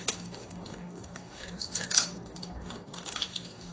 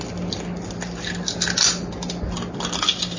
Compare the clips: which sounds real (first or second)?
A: second